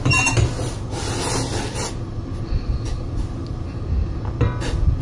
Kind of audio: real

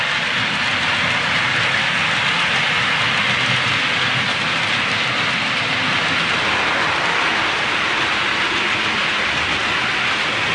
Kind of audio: real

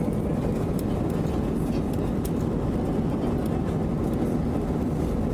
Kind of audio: real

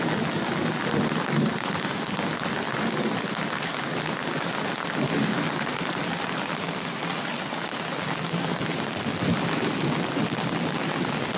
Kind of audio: real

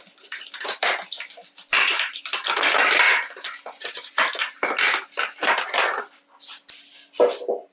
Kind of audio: real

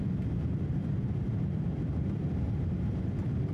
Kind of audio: fake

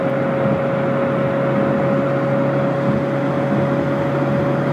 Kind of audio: real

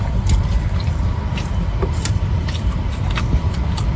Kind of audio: fake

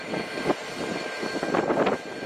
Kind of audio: real